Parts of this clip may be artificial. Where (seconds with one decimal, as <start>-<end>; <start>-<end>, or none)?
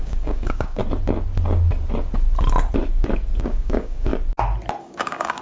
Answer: 0.0-0.8; 3.4-4.1; 4.8-5.4